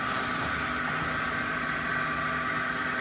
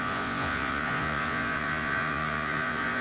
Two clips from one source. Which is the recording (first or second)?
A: first